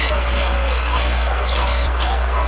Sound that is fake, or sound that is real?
fake